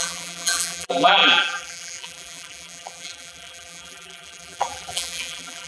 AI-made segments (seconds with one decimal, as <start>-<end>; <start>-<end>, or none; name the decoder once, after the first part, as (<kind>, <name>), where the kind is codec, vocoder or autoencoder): 0.0-5.7 (vocoder, BigVGAN v2)